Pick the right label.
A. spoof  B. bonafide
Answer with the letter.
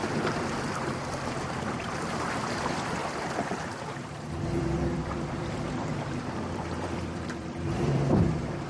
A